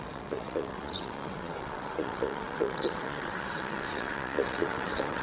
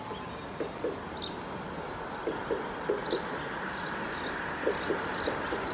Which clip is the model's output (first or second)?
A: first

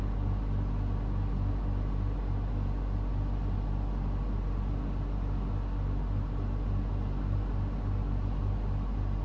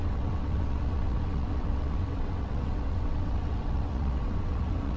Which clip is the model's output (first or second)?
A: second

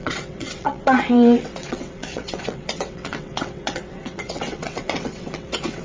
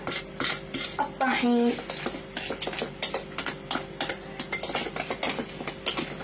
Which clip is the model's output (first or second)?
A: first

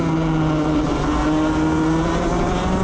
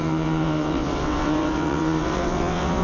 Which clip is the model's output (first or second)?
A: second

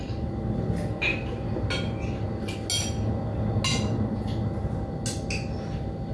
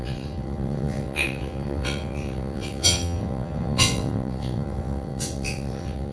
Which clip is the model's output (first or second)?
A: second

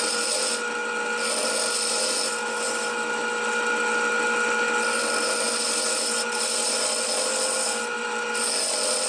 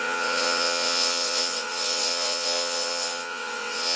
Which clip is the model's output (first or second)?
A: second